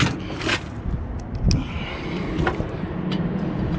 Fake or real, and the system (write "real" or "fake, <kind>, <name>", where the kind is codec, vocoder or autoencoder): real